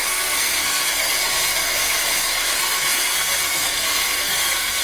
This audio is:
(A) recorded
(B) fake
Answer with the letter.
B